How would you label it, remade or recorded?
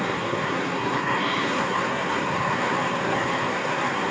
remade